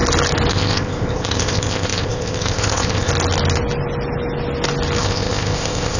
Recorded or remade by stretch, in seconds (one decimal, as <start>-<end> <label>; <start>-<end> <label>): 0.0-0.5 recorded; 0.5-3.1 remade; 3.1-5.0 recorded; 5.0-6.0 remade